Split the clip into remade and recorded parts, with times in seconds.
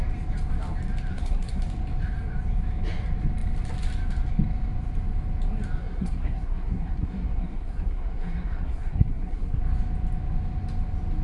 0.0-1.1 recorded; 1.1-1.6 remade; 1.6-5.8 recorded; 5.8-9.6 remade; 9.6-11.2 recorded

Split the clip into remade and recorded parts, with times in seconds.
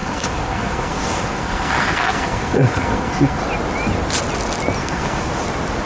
0.0-3.4 remade; 3.4-4.8 recorded; 4.8-5.3 remade; 5.3-5.9 recorded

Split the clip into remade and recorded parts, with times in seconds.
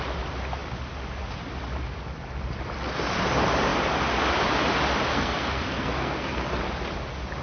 0.0-5.1 recorded; 5.1-6.6 remade; 6.6-7.4 recorded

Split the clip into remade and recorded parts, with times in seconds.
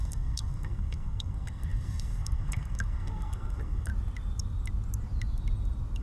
0.0-3.9 remade; 3.9-6.0 recorded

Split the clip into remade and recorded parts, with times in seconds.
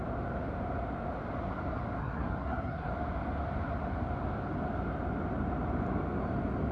0.0-2.0 recorded; 2.0-2.9 remade; 2.9-6.7 recorded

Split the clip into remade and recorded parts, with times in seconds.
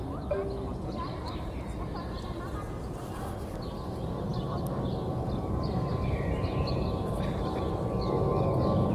0.0-8.9 recorded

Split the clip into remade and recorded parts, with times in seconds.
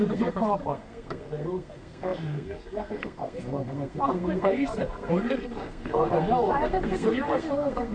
0.0-7.9 remade